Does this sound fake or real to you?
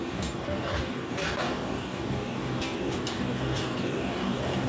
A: fake